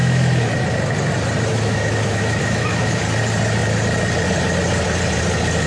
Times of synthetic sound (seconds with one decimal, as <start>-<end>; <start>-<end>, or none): 0.0-0.5; 1.5-3.0